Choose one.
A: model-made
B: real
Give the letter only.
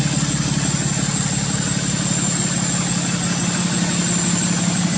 B